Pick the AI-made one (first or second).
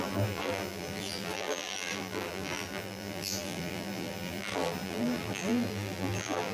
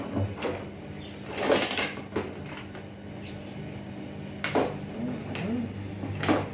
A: first